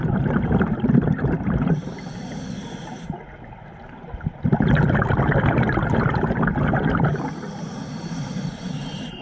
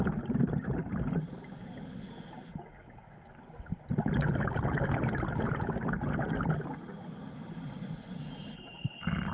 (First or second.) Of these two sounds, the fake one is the first